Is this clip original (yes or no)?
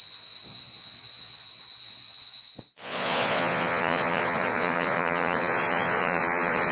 no